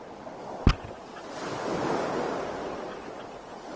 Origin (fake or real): real